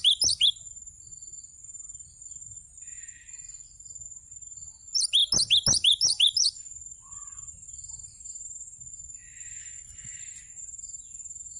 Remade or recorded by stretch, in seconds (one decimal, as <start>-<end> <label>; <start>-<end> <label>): 0.0-9.6 recorded; 9.6-10.2 remade; 10.2-11.6 recorded